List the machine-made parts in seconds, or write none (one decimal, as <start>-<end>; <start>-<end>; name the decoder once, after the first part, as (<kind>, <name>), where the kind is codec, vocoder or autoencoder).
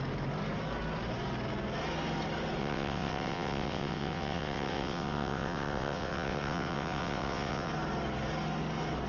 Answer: 2.6-7.7 (vocoder, WaveNeXt)